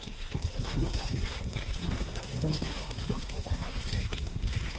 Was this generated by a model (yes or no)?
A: yes